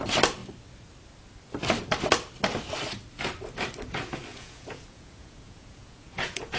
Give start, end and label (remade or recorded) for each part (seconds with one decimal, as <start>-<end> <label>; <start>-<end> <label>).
0.0-4.3 recorded; 4.3-6.6 remade